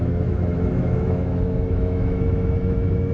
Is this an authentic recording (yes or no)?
no